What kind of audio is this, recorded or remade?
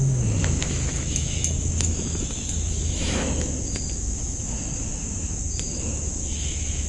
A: remade